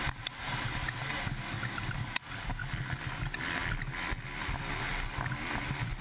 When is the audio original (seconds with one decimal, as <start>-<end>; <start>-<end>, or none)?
0.0-6.0